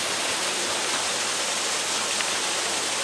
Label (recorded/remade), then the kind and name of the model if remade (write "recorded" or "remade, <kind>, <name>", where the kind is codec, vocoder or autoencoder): recorded